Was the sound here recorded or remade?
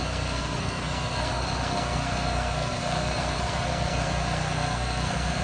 remade